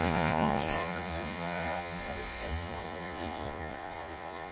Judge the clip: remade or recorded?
remade